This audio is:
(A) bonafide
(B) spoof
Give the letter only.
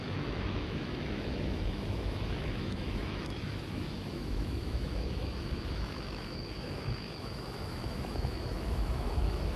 B